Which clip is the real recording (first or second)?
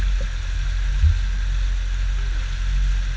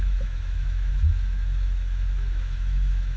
first